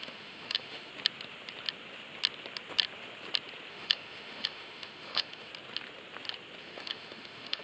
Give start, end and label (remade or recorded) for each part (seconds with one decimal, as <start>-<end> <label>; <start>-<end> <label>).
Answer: 0.0-0.9 remade; 0.9-3.7 recorded; 3.7-5.5 remade; 5.5-6.6 recorded; 6.6-7.6 remade